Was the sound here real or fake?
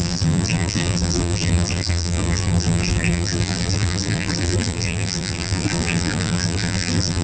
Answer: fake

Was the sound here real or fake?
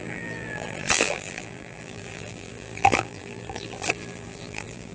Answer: fake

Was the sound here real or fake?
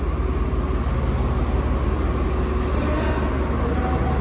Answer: real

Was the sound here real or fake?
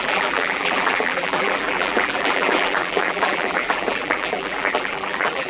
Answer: fake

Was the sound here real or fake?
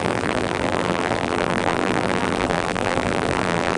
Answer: fake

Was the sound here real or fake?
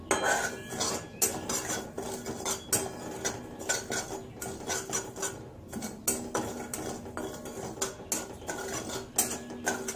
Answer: real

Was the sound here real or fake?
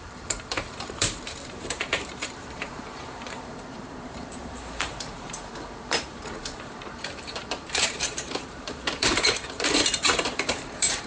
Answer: fake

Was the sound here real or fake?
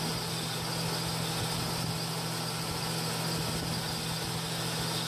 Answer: real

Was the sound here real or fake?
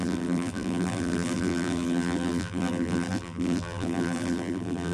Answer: fake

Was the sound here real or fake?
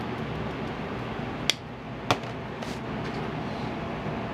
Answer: real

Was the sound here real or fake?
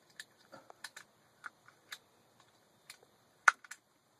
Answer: fake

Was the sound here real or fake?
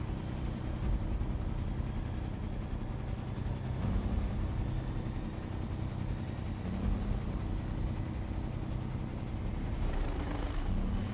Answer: real